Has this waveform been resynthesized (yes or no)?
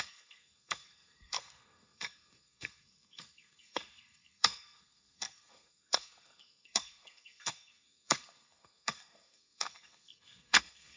yes